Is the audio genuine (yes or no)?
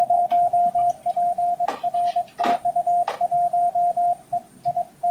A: yes